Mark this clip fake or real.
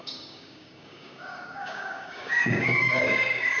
fake